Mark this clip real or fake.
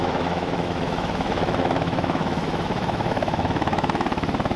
fake